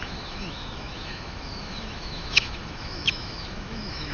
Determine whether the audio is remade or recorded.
remade